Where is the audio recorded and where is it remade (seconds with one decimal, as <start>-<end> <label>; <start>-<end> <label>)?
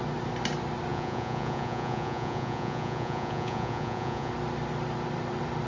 0.0-0.9 recorded; 0.9-4.3 remade; 4.3-5.7 recorded